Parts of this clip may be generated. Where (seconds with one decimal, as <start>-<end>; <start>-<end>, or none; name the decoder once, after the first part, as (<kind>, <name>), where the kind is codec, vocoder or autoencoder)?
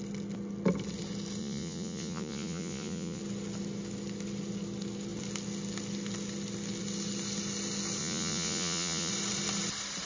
1.4-3.2 (vocoder, Vocos); 8.0-9.1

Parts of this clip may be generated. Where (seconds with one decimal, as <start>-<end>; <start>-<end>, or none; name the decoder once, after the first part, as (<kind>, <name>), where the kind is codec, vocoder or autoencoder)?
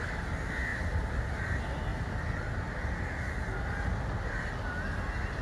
none